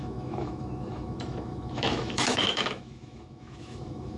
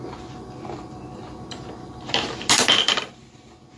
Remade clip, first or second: first